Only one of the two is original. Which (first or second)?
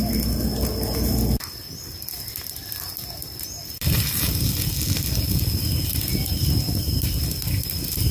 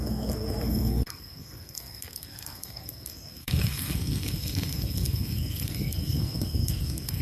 first